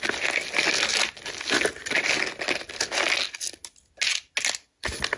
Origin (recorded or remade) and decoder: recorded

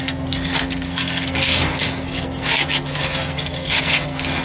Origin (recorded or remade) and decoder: remade, codec, SNAC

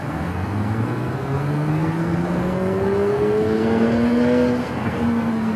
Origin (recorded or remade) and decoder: remade, codec, SNAC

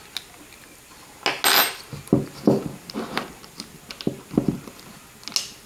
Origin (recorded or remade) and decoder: recorded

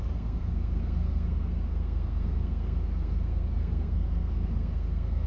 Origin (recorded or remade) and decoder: remade, codec, SNAC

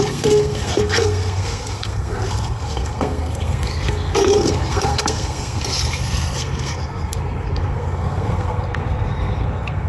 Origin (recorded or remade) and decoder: remade, codec, SNAC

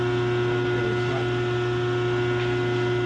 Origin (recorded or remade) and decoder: recorded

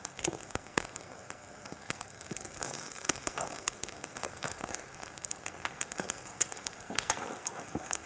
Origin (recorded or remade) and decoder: remade, codec, SNAC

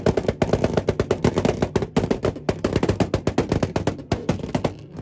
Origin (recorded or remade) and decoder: recorded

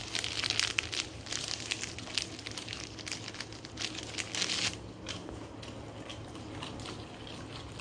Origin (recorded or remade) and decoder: recorded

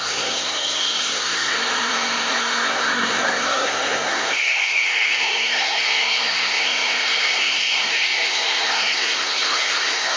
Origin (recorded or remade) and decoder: remade, codec, SNAC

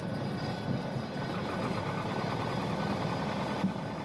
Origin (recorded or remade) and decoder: recorded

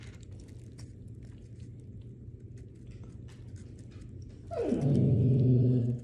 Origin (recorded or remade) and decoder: recorded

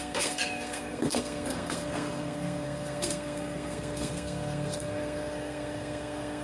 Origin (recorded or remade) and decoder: remade, codec, SNAC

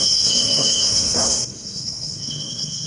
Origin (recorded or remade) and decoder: remade, codec, SNAC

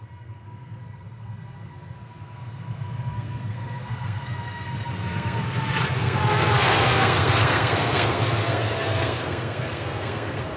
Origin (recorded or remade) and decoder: remade, codec, SNAC